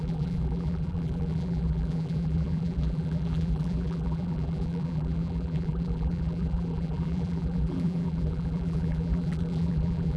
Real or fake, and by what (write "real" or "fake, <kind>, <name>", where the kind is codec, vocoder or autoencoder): fake, vocoder, BigVGAN v2